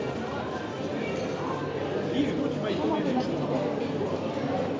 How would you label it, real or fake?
real